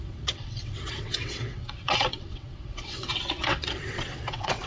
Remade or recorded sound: remade